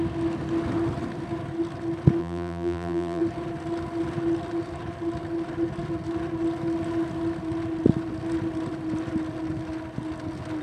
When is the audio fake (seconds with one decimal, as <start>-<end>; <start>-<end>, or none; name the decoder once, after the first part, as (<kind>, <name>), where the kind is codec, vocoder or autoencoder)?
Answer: 2.2-3.2 (vocoder, BigVGAN v2)